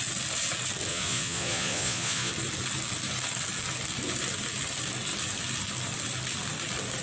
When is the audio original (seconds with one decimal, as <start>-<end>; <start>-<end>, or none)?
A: 0.0-0.9; 2.3-7.0